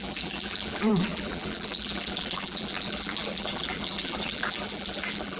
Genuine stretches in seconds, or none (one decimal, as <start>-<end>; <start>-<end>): none